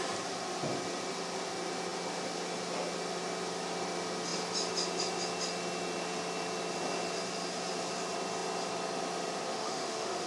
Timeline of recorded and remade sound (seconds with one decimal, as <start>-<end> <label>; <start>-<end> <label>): 0.0-9.5 recorded; 9.5-10.3 remade